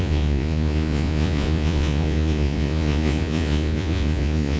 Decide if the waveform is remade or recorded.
remade